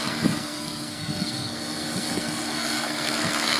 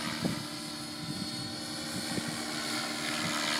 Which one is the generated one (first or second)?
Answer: first